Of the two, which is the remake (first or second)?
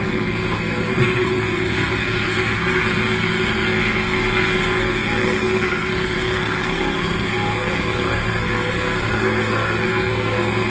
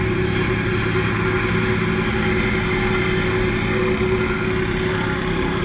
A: first